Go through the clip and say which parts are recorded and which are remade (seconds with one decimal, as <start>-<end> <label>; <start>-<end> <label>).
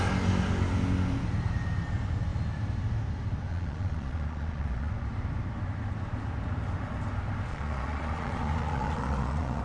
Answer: 0.0-3.5 recorded; 3.5-4.9 remade; 4.9-7.5 recorded; 7.5-9.6 remade